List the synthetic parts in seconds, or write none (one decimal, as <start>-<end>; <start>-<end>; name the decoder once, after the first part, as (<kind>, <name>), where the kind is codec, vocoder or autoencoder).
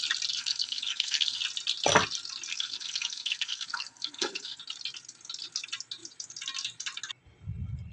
0.4-1.4 (codec, SNAC); 2.5-4.6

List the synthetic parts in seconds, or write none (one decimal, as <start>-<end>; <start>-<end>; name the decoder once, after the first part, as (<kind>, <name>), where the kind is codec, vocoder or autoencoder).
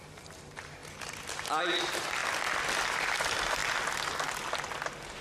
0.0-0.8 (vocoder, BigVGAN v2); 1.6-2.2; 2.9-3.6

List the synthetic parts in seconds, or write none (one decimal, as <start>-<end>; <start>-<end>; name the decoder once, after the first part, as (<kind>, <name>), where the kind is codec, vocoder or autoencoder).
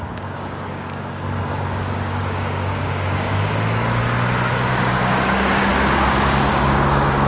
0.0-4.0 (codec, DAC); 4.7-5.7; 6.5-7.3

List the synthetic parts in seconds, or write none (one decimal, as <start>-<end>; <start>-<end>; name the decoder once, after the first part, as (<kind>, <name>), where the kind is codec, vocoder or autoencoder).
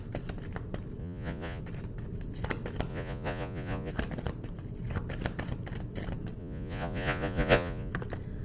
1.0-1.6 (vocoder, Vocos); 2.9-3.9; 6.4-7.9